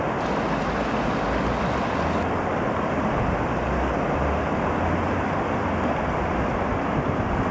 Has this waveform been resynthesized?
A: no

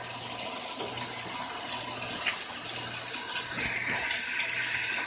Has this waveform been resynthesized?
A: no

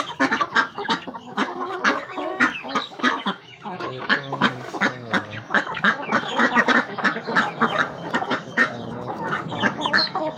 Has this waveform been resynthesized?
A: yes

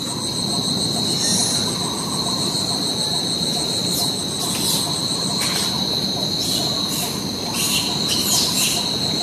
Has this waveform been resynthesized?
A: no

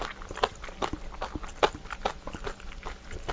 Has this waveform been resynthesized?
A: no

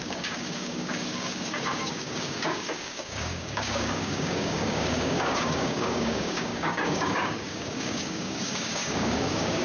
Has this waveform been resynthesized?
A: yes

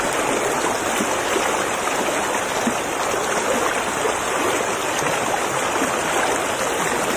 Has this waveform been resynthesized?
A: no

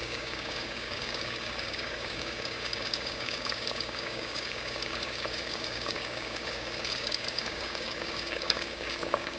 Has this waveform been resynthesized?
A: yes